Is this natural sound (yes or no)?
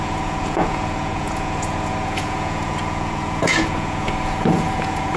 no